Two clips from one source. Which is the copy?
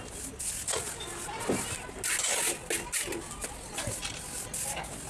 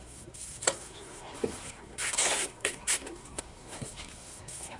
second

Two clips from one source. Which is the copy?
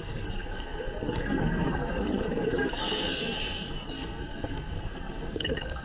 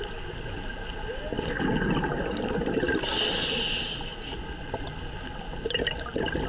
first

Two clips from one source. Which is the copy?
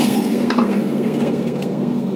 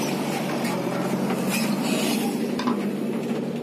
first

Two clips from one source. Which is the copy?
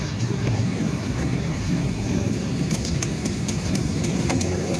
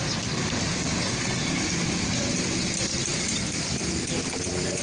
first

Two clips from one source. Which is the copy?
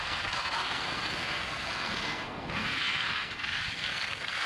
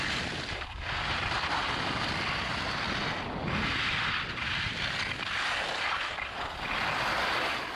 first